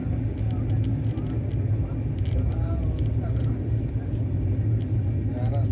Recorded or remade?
recorded